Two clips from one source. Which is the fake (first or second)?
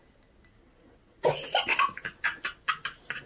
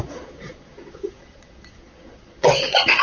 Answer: second